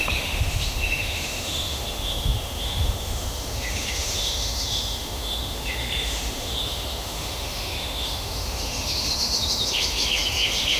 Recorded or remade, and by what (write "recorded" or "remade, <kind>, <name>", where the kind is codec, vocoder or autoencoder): remade, autoencoder, DAC-VAE